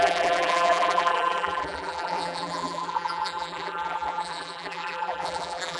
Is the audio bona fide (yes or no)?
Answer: no